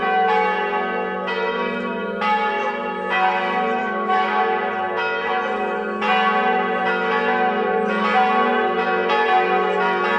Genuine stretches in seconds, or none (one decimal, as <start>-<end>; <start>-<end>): 0.0-3.8; 4.4-10.2